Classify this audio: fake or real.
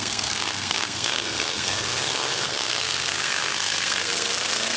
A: fake